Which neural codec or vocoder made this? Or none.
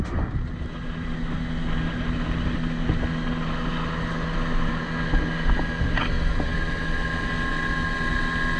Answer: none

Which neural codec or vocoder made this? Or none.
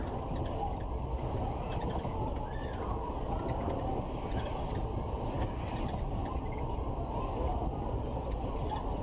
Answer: none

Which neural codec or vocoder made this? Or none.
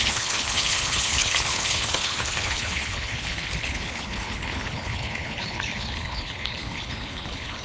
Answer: codec, HILCodec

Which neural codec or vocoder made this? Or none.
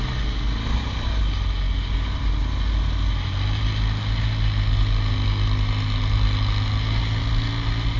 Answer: none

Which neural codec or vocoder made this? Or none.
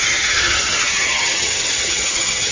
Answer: vocoder, HiFi-GAN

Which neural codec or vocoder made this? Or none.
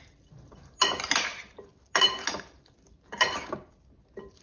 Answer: none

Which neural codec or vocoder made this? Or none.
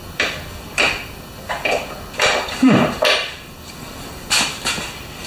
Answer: vocoder, BigVGAN v2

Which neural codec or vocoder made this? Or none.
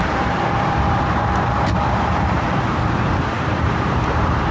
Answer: vocoder, BigVGAN v2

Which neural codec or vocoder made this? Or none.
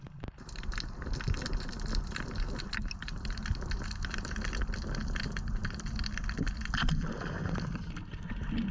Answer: none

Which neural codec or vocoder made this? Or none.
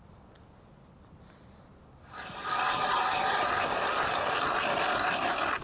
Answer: none